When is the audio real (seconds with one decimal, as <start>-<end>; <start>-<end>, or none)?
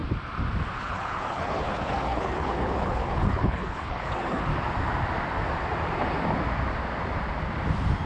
0.0-0.8; 4.5-8.1